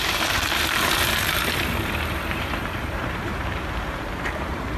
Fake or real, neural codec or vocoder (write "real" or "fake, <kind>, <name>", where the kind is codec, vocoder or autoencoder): fake, vocoder, BigVGAN v2